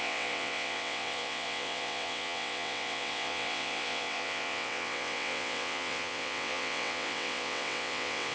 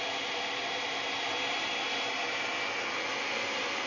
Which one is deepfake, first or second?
first